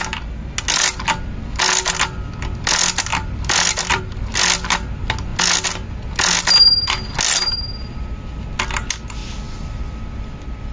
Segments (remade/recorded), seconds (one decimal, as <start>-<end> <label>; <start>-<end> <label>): 0.0-3.1 recorded; 3.1-4.0 remade; 4.0-9.2 recorded; 9.2-10.0 remade; 10.0-10.7 recorded